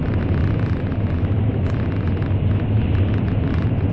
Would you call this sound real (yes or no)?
yes